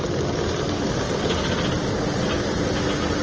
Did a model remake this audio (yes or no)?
no